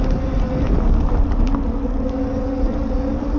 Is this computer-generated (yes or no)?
no